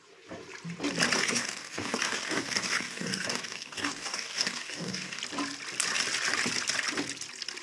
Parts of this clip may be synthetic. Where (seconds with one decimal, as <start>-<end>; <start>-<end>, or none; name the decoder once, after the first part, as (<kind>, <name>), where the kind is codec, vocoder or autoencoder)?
1.2-5.2 (codec, DAC)